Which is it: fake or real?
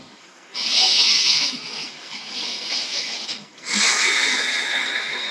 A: fake